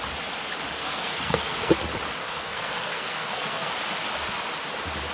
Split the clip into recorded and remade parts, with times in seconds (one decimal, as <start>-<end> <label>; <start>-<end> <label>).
0.0-0.8 recorded; 0.8-1.7 remade; 1.7-2.2 recorded; 2.2-3.7 remade; 3.7-5.1 recorded